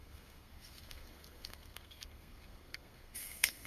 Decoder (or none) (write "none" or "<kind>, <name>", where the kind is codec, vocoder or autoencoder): codec, SNAC